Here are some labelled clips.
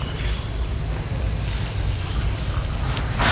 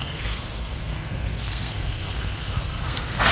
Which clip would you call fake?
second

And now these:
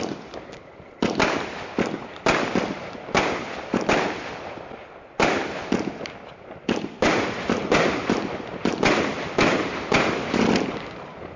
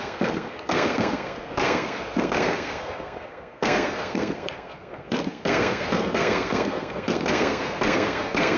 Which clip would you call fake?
second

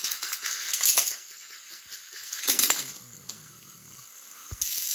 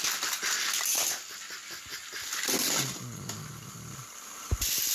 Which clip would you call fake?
first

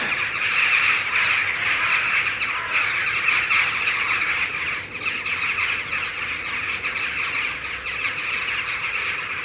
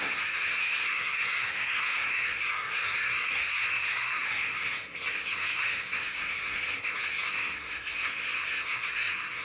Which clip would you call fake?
second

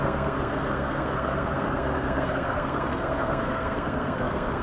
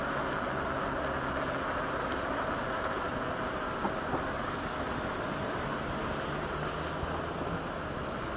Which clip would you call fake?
first